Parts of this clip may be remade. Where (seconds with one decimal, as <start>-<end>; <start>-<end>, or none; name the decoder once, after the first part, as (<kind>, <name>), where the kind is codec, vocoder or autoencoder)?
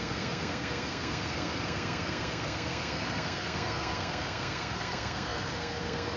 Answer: 0.0-6.2 (codec, SNAC)